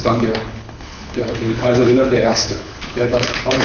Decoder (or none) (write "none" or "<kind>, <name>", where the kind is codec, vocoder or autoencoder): codec, HILCodec